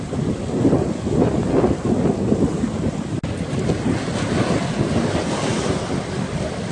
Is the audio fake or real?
real